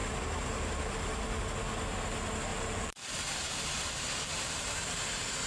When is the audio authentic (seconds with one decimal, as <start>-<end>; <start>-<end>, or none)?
1.2-2.5; 5.0-5.5